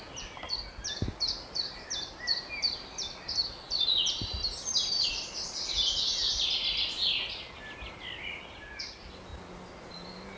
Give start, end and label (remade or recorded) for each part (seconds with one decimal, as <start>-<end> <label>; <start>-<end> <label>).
0.0-10.4 recorded